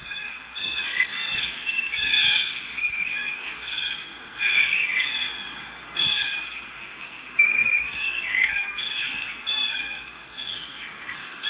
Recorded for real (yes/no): no